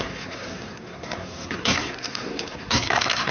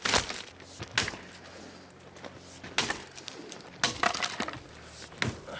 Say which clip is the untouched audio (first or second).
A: second